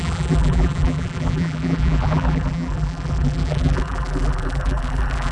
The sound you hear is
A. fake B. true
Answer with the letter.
A